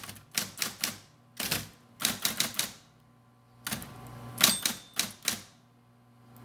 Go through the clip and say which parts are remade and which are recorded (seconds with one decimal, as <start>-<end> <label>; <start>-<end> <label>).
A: 0.0-6.4 recorded